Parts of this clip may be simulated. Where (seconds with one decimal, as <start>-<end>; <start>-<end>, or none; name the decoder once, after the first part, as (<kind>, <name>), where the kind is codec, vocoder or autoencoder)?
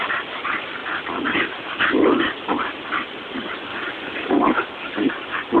none